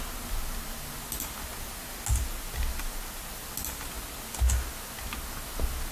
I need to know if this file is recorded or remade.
recorded